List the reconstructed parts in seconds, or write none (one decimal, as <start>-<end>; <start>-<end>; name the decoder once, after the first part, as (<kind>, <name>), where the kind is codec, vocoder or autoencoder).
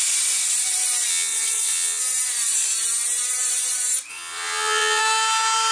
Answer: 1.1-2.0 (vocoder, WaveNeXt); 4.1-5.0